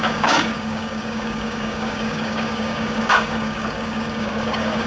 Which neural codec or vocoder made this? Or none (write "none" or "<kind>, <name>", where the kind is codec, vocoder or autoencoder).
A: codec, DAC